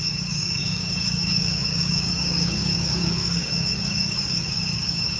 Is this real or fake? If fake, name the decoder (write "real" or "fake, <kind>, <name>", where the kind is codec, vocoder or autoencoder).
fake, codec, DAC